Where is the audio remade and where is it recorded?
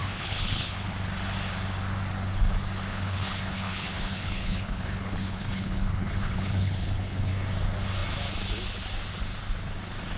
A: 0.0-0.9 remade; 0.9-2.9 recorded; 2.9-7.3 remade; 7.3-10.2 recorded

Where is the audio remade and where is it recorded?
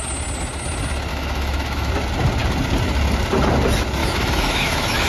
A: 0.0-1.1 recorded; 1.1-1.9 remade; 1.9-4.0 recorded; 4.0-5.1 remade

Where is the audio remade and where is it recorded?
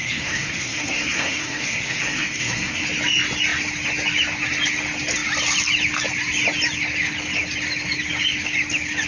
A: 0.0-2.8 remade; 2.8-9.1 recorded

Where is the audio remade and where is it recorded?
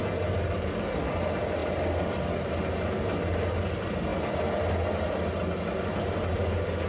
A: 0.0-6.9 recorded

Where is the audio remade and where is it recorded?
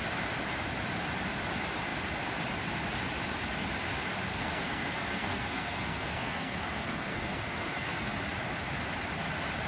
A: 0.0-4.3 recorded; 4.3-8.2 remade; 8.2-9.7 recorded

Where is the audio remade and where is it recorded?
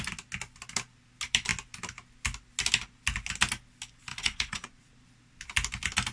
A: 0.0-4.1 recorded; 4.1-4.7 remade; 4.7-6.1 recorded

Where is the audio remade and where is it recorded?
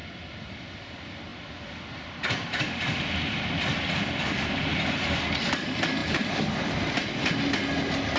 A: 0.0-0.5 remade; 0.5-6.0 recorded; 6.0-7.4 remade; 7.4-8.2 recorded